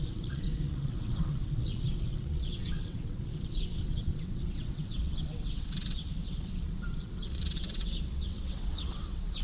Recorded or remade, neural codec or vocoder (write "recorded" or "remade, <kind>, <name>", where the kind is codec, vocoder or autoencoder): remade, vocoder, WaveNeXt